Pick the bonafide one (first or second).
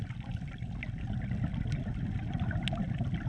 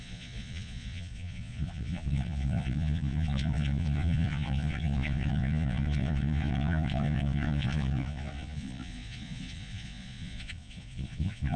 first